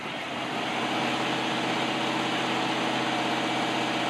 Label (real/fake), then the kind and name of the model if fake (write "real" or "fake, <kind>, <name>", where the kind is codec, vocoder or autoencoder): real